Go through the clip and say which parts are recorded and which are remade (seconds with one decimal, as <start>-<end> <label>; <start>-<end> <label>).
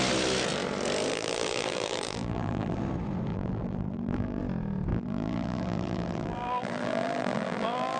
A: 0.0-1.1 recorded; 1.1-2.8 remade; 2.8-3.3 recorded; 3.3-4.4 remade; 4.4-4.9 recorded; 4.9-8.0 remade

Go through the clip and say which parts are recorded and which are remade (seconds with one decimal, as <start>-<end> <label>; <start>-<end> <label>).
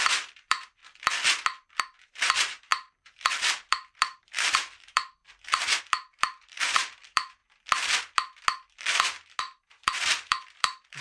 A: 0.0-0.8 remade; 0.8-1.8 recorded; 1.8-5.2 remade; 5.2-5.8 recorded; 5.8-7.4 remade; 7.4-9.4 recorded; 9.4-11.0 remade